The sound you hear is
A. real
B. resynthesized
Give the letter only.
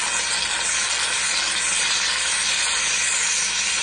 A